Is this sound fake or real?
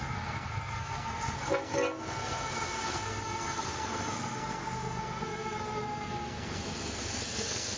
fake